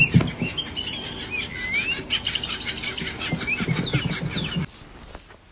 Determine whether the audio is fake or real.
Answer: real